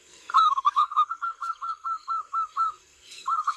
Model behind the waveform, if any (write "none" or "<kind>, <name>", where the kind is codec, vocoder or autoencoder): codec, SNAC